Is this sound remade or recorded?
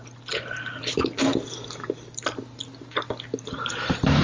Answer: recorded